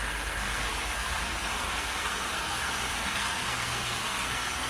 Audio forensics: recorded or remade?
remade